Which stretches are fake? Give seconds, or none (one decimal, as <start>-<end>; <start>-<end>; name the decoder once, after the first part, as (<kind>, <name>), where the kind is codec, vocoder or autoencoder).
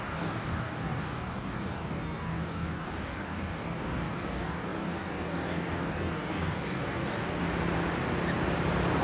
0.0-7.4 (codec, DAC)